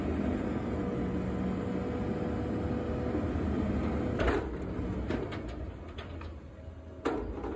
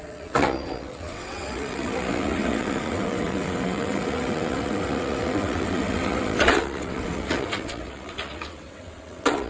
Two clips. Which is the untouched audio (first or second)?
first